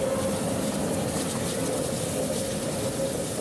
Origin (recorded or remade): recorded